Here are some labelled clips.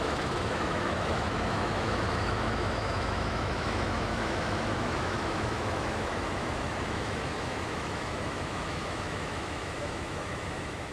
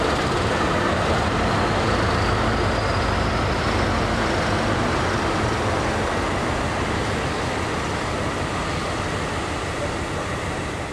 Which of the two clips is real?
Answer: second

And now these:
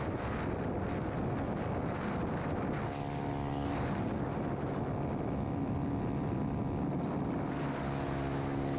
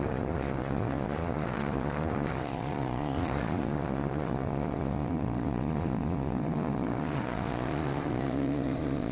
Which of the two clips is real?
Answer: first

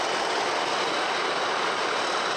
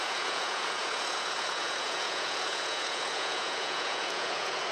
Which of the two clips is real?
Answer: first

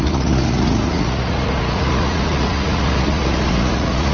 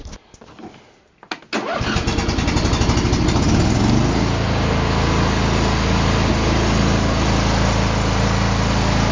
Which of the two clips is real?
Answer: second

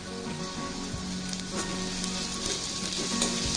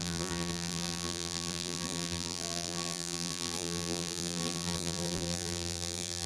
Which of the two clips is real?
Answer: first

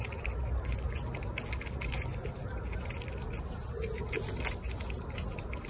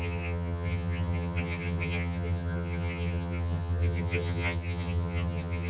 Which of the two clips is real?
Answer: first